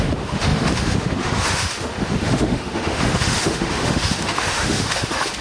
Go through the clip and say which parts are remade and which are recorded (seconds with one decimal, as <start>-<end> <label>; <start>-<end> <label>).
0.0-5.4 remade